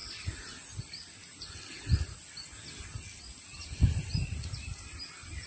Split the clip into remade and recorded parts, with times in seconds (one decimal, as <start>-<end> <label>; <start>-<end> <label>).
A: 0.0-5.5 recorded

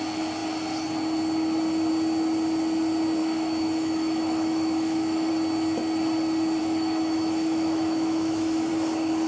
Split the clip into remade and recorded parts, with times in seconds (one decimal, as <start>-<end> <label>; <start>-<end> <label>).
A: 0.0-3.2 recorded; 3.2-5.3 remade; 5.3-6.6 recorded; 6.6-8.7 remade; 8.7-9.3 recorded

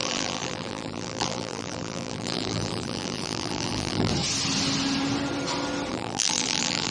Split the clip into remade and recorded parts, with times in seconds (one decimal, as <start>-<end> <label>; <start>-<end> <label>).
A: 0.0-4.1 remade; 4.1-5.9 recorded; 5.9-6.9 remade

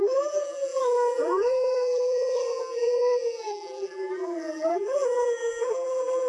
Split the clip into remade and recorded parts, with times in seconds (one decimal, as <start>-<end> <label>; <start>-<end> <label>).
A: 0.0-6.3 remade

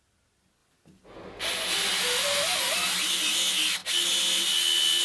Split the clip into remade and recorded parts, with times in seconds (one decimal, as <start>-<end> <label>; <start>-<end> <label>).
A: 0.0-5.0 recorded

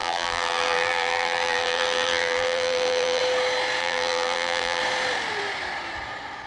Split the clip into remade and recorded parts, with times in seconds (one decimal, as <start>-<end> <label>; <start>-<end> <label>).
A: 0.0-3.2 remade; 3.2-3.8 recorded; 3.8-4.8 remade; 4.8-6.5 recorded